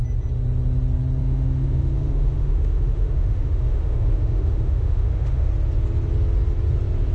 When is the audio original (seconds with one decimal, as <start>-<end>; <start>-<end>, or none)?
0.0-1.2; 5.5-7.1